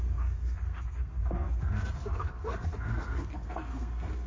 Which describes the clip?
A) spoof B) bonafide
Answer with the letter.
A